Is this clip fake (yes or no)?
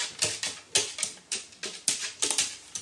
no